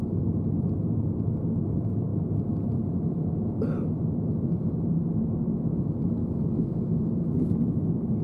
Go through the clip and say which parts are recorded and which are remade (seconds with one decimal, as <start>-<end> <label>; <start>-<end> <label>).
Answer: 0.0-6.2 recorded; 6.2-6.7 remade; 6.7-8.2 recorded